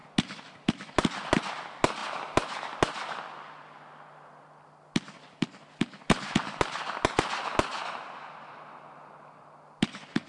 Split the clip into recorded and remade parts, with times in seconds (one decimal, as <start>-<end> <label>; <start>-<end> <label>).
0.0-10.3 recorded